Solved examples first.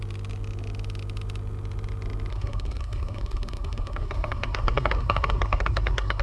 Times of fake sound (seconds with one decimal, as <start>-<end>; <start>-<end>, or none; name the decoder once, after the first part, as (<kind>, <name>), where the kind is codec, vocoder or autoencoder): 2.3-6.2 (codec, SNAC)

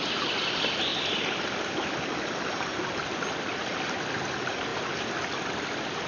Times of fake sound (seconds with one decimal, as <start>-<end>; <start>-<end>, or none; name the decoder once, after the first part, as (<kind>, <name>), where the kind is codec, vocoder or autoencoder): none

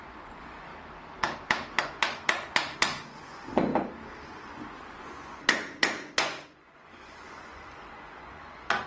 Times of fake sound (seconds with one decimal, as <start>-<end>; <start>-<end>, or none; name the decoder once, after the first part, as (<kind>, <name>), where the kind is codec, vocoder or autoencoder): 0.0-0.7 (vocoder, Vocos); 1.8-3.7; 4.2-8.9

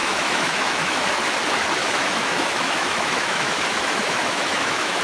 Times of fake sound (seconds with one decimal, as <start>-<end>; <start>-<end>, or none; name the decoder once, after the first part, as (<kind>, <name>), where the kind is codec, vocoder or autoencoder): 0.0-1.1 (autoencoder, DAC-VAE); 1.8-5.0